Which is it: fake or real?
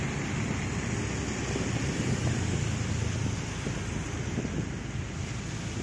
real